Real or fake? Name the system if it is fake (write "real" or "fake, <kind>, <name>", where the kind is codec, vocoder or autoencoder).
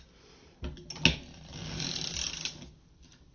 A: real